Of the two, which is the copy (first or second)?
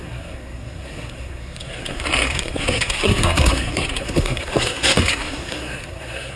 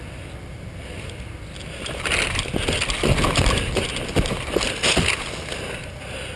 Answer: first